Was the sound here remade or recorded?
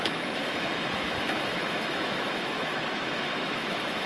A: remade